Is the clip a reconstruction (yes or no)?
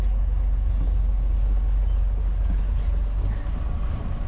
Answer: no